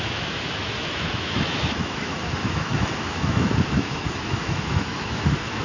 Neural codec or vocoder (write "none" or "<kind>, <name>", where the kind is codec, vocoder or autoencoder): autoencoder, DAC-VAE